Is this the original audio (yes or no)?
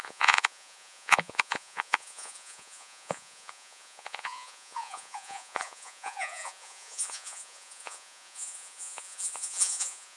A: no